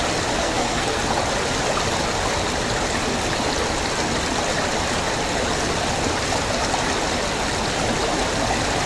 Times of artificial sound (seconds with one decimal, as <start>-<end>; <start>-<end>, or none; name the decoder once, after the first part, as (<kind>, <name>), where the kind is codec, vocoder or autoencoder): 0.4-1.0 (codec, SNAC)